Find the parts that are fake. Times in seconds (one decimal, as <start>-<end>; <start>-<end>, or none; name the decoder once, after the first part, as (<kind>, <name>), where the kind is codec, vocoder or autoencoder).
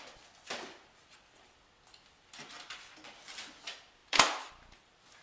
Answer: 4.0-4.5 (vocoder, BigVGAN v2)